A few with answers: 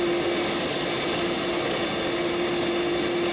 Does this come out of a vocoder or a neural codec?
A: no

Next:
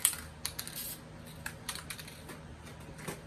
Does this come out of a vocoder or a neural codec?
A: no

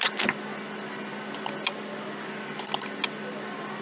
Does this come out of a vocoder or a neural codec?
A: no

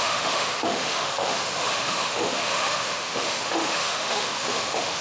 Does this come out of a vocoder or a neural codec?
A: yes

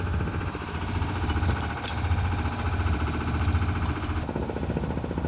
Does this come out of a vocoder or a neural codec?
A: no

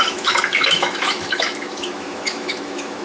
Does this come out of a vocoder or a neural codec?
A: yes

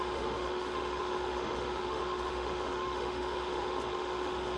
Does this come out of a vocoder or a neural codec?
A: yes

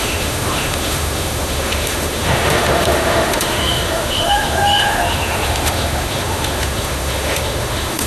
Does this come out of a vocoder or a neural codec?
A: yes